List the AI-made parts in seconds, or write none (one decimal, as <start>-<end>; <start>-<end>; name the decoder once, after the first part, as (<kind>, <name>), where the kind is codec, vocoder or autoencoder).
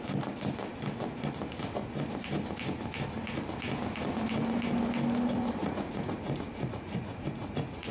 5.6-7.9 (vocoder, Vocos)